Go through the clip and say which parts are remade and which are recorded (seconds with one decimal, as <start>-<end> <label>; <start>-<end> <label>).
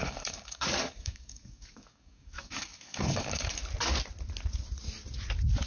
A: 0.0-3.6 remade; 3.6-5.7 recorded